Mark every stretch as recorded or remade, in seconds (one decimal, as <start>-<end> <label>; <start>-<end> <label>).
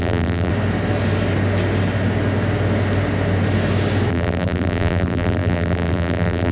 0.0-0.5 remade; 0.5-4.1 recorded; 4.1-6.5 remade